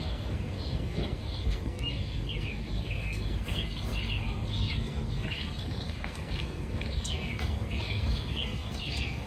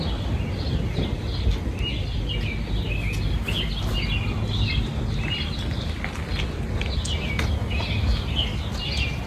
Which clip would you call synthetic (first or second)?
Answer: first